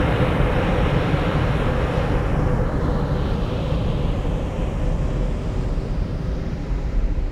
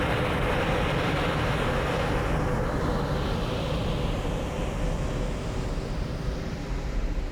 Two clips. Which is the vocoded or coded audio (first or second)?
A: first